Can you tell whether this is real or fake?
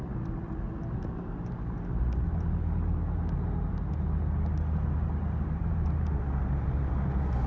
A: real